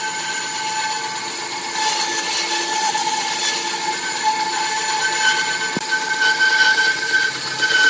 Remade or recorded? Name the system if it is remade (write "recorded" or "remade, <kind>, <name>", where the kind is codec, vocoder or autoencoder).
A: recorded